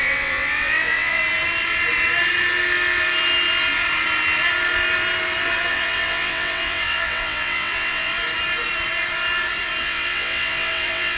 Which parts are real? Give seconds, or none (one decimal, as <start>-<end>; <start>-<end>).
1.2-5.7; 8.1-9.8